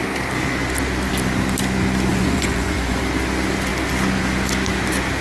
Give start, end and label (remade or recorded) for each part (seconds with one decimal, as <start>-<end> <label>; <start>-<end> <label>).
0.0-2.1 recorded; 2.1-3.0 remade; 3.0-5.2 recorded